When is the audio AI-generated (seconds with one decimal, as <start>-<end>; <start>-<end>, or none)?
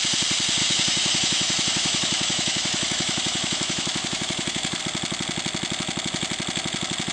0.6-4.8